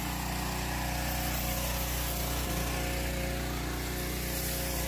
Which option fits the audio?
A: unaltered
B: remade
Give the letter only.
A